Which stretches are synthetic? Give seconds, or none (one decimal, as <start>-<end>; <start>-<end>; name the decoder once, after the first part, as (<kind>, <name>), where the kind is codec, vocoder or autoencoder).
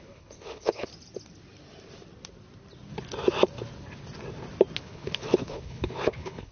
0.0-0.9 (codec, HILCodec); 4.8-6.5